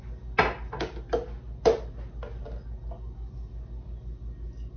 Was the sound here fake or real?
real